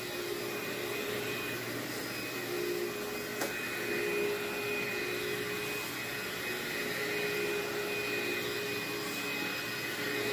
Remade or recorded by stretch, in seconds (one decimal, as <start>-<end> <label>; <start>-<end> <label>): 0.0-0.6 recorded; 0.6-2.0 remade; 2.0-10.3 recorded